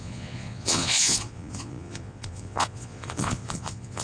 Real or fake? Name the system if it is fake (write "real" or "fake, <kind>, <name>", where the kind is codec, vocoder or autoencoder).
fake, vocoder, Vocos